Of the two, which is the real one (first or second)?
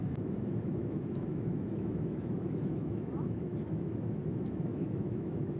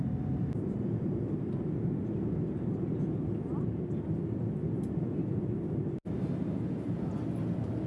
second